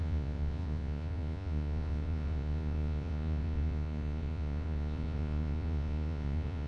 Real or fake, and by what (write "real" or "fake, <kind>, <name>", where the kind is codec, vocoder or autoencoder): fake, vocoder, Vocos